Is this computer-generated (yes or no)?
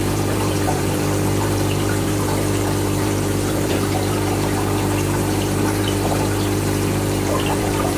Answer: yes